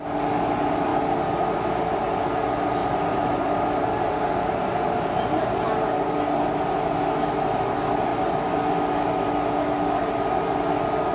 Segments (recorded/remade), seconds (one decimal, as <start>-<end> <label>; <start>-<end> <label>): 0.0-2.8 recorded; 2.8-4.3 remade; 4.3-8.1 recorded; 8.1-8.7 remade; 8.7-11.1 recorded